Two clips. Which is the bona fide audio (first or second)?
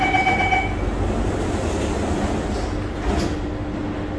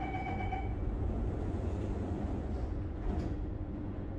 first